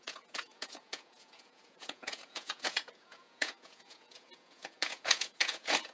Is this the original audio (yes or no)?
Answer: no